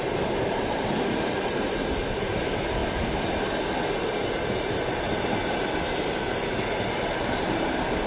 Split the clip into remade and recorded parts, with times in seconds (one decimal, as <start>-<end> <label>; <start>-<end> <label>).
0.0-8.1 recorded